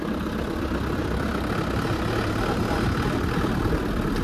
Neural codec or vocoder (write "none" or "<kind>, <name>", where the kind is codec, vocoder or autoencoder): none